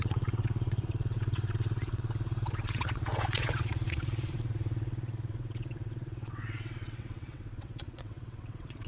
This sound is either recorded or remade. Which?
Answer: remade